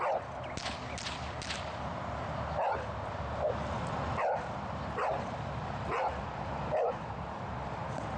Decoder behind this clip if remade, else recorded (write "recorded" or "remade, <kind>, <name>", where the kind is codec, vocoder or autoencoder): recorded